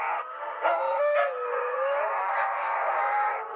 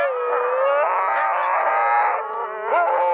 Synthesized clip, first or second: first